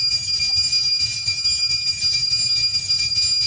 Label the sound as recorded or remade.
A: recorded